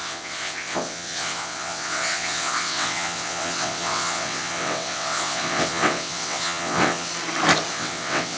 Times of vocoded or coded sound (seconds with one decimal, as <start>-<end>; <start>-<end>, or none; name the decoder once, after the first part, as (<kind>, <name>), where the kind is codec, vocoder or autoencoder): 0.0-7.1 (vocoder, WaveNeXt); 7.7-8.4